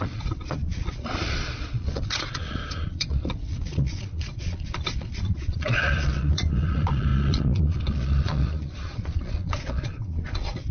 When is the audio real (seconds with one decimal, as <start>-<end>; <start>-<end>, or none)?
none